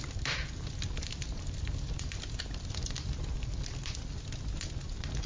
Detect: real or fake real